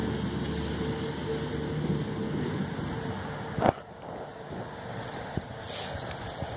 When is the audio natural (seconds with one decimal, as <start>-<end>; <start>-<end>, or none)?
0.0-6.6